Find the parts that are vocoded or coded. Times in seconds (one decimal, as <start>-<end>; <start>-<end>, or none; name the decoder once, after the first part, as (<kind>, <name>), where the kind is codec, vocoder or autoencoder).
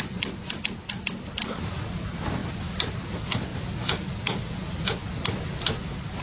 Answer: none